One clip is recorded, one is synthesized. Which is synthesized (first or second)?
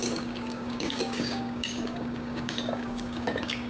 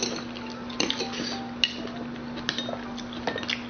first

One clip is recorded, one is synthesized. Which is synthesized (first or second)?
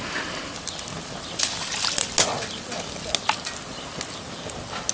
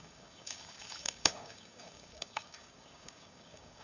second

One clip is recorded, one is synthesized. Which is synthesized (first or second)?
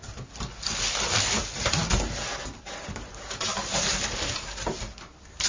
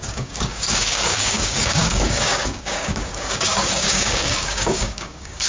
second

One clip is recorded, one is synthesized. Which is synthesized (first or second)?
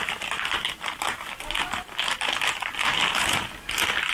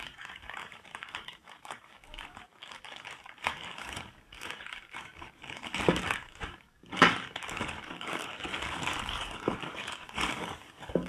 second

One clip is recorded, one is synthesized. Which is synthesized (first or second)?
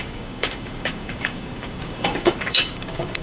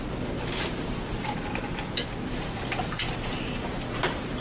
first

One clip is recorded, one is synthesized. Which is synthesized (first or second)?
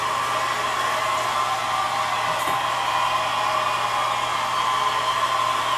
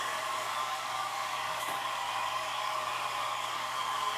second